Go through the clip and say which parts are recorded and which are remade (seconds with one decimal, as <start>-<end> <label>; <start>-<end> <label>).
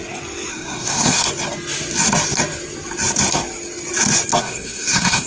0.0-0.5 recorded; 0.5-1.2 remade; 1.2-4.4 recorded; 4.4-5.3 remade